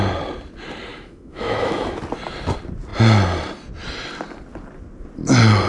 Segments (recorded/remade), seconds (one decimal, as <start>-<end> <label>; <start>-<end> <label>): 0.0-0.9 recorded; 0.9-2.0 remade; 2.0-5.7 recorded